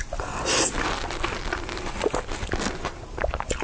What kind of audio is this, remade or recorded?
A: recorded